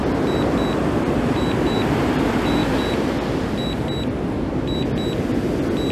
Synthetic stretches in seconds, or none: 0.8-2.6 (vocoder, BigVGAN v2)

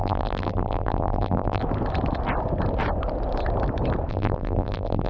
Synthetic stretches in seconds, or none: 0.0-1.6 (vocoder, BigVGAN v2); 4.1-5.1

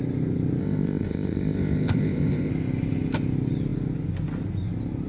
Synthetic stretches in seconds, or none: 0.6-2.5 (codec, ZipCodec)

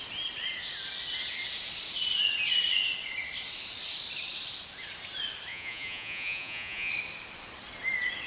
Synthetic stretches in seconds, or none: 5.5-6.9 (vocoder, Vocos)

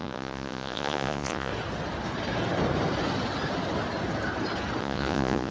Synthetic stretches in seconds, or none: 0.0-1.5 (vocoder, Vocos); 4.8-5.5

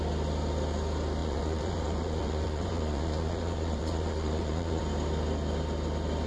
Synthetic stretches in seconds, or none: 1.2-4.8 (vocoder, Vocos)

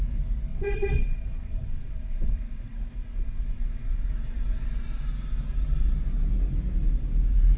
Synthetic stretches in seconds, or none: 0.5-4.1 (vocoder, WaveNeXt)

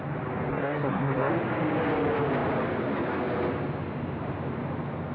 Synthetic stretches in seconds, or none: 0.5-1.3 (codec, SNAC)